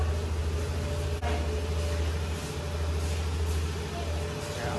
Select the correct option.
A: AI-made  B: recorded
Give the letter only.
B